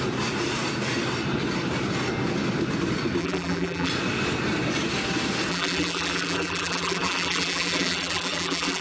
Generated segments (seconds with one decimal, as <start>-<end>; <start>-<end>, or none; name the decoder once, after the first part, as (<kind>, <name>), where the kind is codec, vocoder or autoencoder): 3.2-3.9 (vocoder, BigVGAN v2); 5.5-8.8